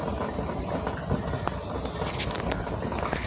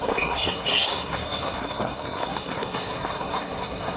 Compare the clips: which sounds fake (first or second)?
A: second